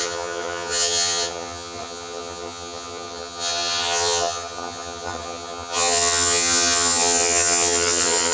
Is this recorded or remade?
remade